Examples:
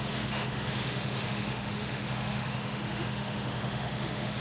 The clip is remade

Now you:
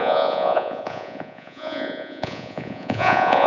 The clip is remade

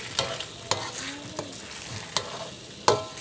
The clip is recorded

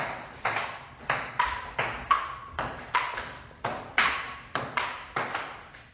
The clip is remade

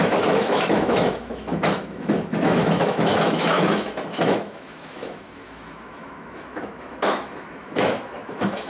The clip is remade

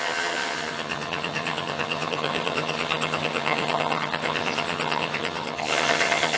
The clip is remade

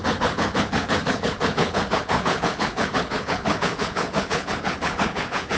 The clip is remade